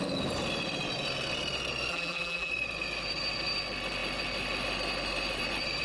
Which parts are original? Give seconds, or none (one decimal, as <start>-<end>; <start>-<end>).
0.0-1.9; 2.5-5.8